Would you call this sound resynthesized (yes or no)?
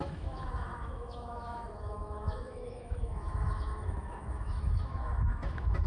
yes